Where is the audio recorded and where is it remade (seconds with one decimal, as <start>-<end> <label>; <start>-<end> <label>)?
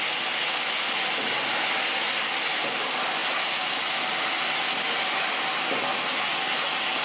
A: 0.0-7.0 recorded